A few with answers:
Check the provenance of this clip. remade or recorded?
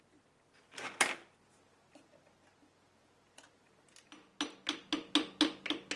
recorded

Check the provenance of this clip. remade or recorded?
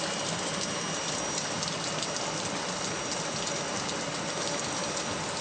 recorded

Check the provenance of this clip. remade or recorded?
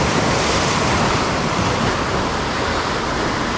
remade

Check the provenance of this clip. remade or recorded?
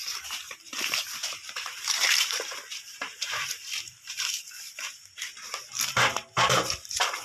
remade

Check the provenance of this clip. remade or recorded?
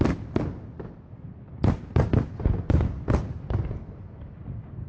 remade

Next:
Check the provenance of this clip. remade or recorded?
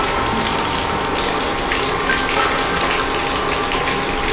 recorded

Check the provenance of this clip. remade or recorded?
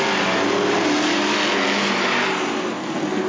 recorded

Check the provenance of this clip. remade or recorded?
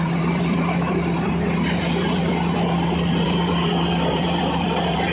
remade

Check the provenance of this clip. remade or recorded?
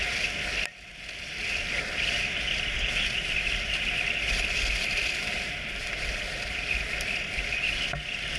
recorded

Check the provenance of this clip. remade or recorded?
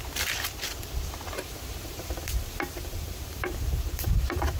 remade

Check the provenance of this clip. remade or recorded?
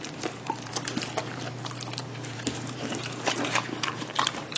remade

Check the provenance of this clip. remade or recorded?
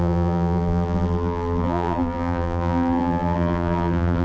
remade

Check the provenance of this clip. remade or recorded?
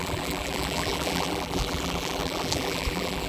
remade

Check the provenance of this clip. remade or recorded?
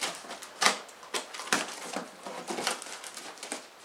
remade